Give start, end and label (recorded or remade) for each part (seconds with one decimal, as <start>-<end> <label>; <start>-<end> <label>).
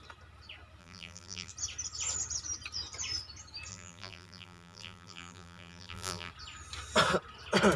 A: 0.0-0.8 recorded; 0.8-1.5 remade; 1.5-3.7 recorded; 3.7-6.3 remade; 6.3-7.8 recorded